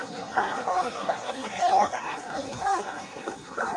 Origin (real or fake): fake